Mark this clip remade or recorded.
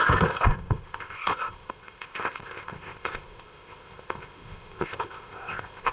remade